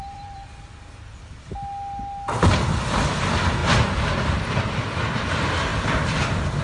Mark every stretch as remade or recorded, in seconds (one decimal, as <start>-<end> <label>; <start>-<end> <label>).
0.0-0.4 remade; 0.4-2.5 recorded; 2.5-3.6 remade; 3.6-4.5 recorded; 4.5-6.6 remade